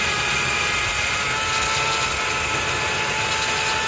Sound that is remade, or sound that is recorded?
recorded